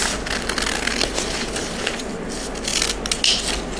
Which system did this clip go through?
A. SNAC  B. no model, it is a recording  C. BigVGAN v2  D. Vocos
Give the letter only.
B